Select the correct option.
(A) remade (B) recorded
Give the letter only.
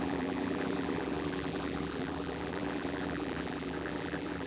A